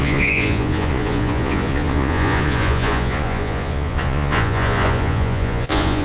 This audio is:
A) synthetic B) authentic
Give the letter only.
A